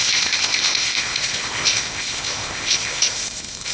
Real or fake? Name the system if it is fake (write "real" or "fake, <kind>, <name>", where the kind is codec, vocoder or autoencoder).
fake, codec, ZipCodec